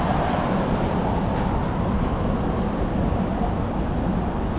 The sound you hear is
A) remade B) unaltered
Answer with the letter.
B